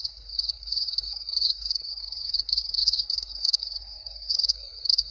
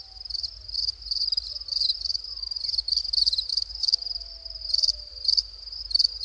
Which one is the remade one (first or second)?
first